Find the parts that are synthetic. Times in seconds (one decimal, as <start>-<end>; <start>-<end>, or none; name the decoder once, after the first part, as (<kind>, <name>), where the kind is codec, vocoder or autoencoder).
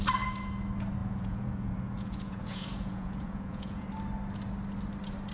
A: 1.0-3.9 (vocoder, Vocos)